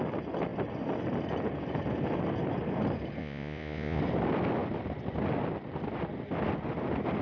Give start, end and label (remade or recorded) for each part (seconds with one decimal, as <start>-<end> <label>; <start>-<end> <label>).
0.0-3.2 recorded; 3.2-4.0 remade; 4.0-7.2 recorded